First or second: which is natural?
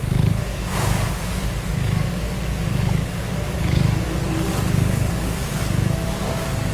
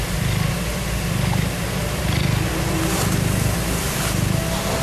second